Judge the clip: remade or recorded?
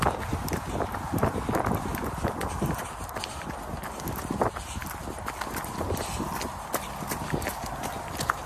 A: recorded